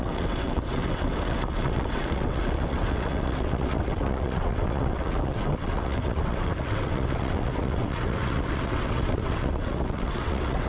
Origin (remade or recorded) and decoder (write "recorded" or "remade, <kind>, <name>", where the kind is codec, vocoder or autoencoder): remade, vocoder, WaveNeXt